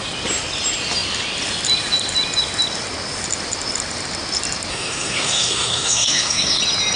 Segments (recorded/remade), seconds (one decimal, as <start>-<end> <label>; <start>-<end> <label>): 0.0-4.7 recorded; 4.7-6.6 remade; 6.6-7.0 recorded